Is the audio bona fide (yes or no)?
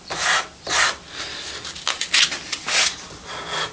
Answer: yes